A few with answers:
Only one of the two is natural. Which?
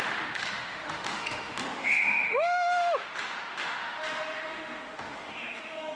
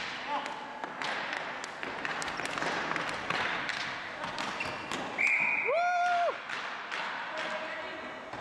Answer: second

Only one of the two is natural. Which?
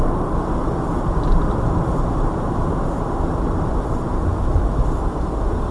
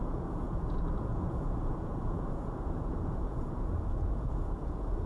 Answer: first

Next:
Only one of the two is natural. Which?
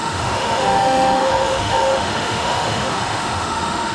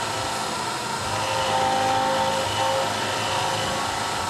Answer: second